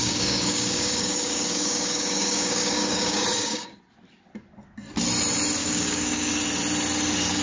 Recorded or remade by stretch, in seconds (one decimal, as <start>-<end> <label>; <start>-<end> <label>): 0.0-3.7 remade; 3.7-5.6 recorded; 5.6-6.3 remade; 6.3-7.4 recorded